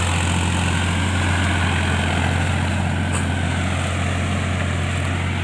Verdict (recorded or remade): recorded